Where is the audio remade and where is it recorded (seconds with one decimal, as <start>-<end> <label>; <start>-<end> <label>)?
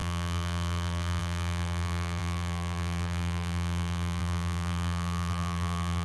0.0-6.0 remade